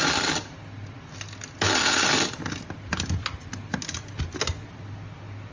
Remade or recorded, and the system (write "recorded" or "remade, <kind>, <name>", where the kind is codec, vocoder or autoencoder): recorded